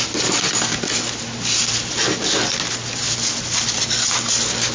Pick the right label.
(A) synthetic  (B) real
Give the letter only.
B